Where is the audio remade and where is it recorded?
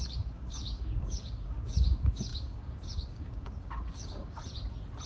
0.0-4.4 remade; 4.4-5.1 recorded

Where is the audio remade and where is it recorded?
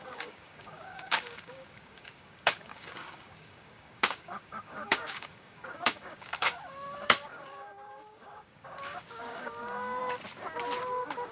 0.0-10.0 remade; 10.0-10.8 recorded; 10.8-11.3 remade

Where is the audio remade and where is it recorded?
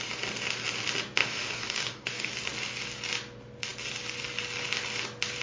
0.0-1.2 recorded; 1.2-2.3 remade; 2.3-5.4 recorded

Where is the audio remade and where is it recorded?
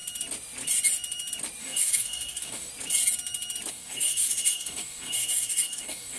0.0-1.6 recorded; 1.6-2.7 remade; 2.7-3.7 recorded; 3.7-6.2 remade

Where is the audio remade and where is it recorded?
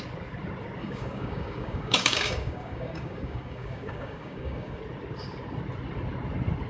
0.0-0.8 recorded; 0.8-4.8 remade; 4.8-6.7 recorded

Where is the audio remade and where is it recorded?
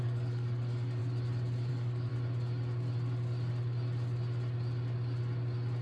0.0-1.0 remade; 1.0-1.7 recorded; 1.7-2.1 remade; 2.1-5.8 recorded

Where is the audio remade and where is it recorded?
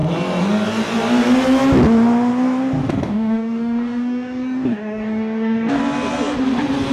0.0-2.8 recorded; 2.8-5.8 remade; 5.8-6.9 recorded